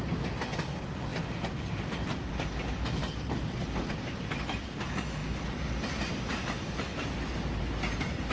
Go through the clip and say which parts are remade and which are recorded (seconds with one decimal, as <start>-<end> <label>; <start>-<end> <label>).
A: 0.0-8.3 recorded